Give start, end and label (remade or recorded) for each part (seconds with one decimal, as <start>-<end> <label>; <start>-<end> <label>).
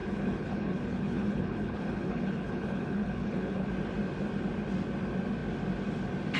0.0-3.7 remade; 3.7-6.4 recorded